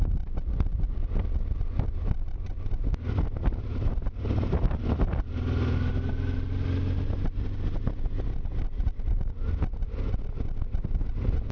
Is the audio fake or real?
real